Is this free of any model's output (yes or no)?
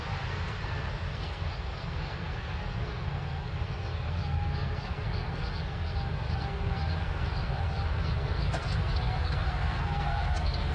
no